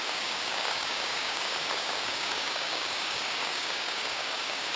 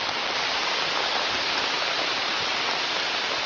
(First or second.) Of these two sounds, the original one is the second